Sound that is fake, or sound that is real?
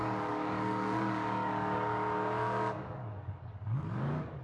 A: fake